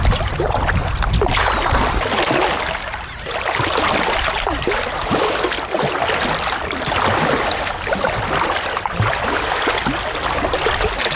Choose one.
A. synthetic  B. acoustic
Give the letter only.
B